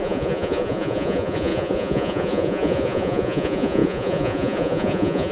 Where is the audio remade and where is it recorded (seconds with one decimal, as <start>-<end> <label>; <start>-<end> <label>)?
0.0-5.3 remade